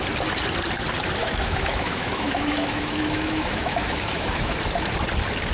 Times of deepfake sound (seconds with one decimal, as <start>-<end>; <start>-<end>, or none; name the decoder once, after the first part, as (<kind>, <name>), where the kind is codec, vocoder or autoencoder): 1.2-4.5 (autoencoder, DAC-VAE)